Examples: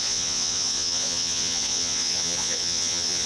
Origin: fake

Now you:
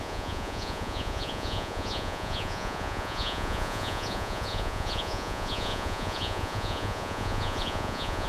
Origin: fake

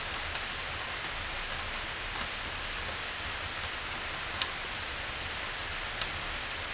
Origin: real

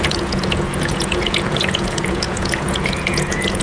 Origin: fake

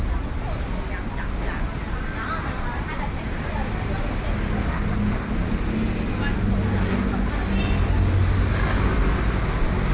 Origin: real